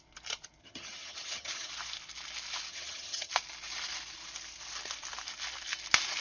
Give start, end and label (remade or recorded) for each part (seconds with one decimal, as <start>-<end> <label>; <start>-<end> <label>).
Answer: 0.0-0.6 recorded; 0.6-1.7 remade; 1.7-2.7 recorded; 2.7-3.3 remade; 3.3-6.2 recorded